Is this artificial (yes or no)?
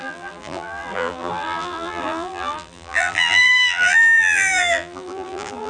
yes